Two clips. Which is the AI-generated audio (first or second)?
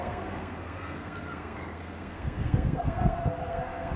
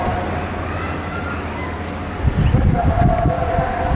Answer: first